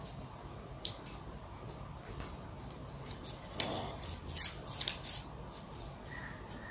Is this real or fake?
real